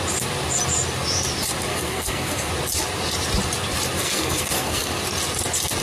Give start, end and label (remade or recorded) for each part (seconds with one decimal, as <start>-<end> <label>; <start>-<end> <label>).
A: 0.0-1.7 recorded; 1.7-2.5 remade; 2.5-4.0 recorded; 4.0-5.0 remade; 5.0-5.8 recorded